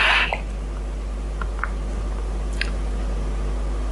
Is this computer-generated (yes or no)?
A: no